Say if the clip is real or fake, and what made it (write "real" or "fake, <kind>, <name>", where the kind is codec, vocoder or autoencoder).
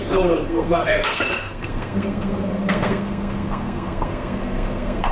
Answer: fake, codec, SNAC